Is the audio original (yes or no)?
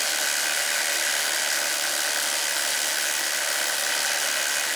yes